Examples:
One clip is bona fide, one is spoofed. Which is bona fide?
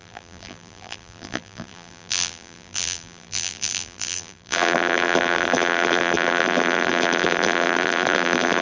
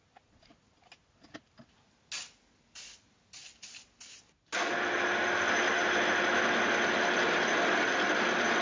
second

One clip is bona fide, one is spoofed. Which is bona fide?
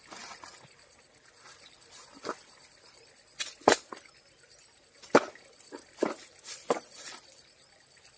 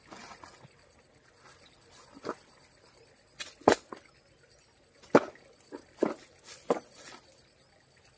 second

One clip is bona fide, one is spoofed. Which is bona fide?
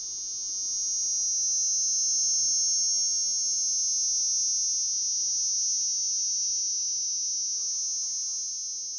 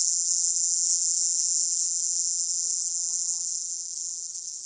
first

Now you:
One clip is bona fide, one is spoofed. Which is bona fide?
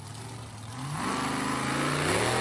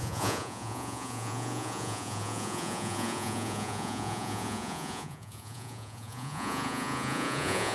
first